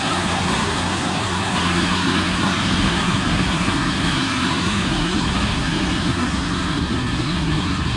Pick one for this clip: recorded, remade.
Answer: remade